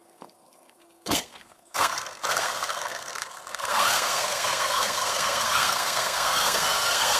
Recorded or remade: remade